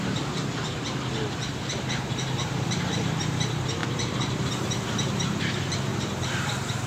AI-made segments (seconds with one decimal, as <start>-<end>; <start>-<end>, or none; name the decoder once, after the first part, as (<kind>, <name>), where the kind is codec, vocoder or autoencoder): 0.0-0.4 (vocoder, BigVGAN v2); 1.5-6.9